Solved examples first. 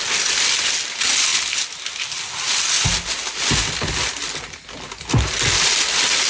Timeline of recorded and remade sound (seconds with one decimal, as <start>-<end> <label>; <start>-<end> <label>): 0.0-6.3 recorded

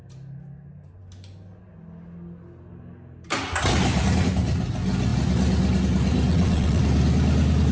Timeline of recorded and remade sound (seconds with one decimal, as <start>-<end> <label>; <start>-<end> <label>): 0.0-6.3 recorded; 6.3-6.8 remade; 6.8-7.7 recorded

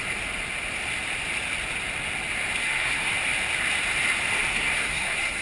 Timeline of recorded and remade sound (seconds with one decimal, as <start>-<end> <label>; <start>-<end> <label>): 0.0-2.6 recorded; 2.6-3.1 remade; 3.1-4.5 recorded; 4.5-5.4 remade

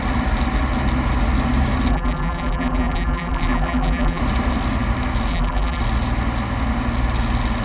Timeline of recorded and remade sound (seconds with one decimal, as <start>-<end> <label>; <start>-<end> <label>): 0.0-1.9 recorded; 1.9-4.2 remade; 4.2-5.3 recorded; 5.3-5.8 remade; 5.8-7.6 recorded

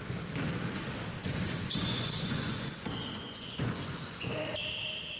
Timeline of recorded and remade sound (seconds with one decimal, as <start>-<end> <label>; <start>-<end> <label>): 0.0-1.2 recorded; 1.2-4.3 remade; 4.3-5.2 recorded